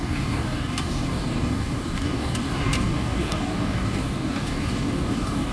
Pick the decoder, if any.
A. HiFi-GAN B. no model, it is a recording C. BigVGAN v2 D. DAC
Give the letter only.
D